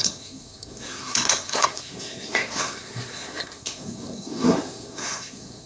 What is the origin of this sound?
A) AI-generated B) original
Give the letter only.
A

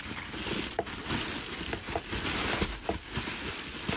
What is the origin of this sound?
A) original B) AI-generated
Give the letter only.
A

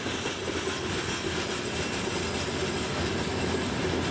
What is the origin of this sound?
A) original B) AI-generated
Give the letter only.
A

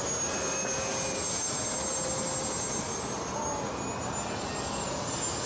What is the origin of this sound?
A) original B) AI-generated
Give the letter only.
A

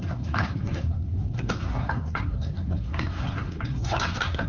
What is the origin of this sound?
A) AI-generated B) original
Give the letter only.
A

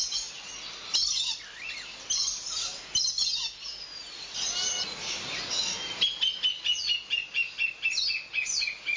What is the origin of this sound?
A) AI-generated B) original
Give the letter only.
B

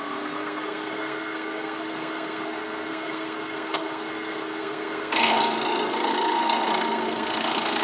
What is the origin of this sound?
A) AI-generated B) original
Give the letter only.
A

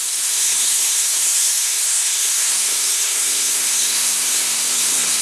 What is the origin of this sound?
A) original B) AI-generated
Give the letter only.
B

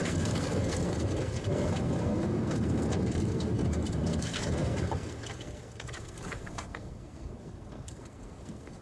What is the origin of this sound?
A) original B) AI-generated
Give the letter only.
B